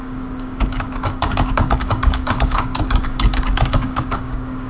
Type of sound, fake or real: fake